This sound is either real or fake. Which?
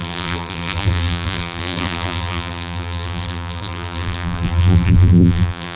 fake